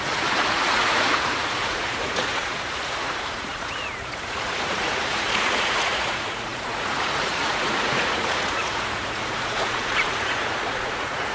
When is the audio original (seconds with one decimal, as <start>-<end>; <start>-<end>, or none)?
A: none